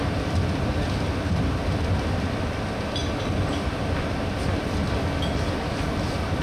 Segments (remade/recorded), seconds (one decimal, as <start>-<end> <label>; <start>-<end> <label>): 0.0-6.4 recorded